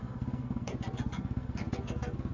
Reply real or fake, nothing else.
fake